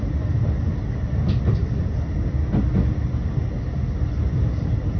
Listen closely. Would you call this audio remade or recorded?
recorded